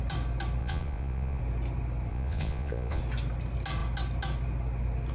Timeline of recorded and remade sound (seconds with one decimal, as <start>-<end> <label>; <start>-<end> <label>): 0.0-0.6 recorded; 0.6-1.4 remade; 1.4-2.1 recorded; 2.1-3.0 remade; 3.0-5.1 recorded